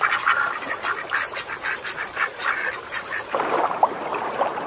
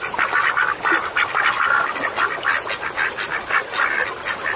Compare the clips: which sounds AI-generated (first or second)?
first